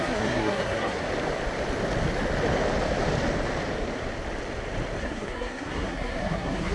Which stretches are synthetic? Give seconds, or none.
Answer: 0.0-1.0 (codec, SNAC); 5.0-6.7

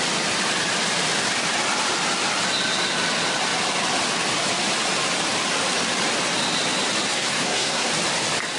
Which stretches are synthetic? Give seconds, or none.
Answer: 7.1-7.9 (codec, SNAC)

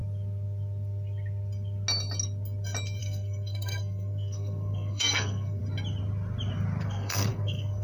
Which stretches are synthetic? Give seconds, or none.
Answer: 3.0-5.6 (codec, SNAC); 6.8-7.8